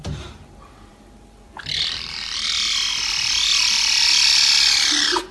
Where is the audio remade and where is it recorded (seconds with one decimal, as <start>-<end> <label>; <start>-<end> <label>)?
0.0-5.3 recorded